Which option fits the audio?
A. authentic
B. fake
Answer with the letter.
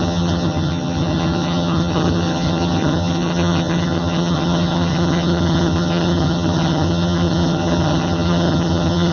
B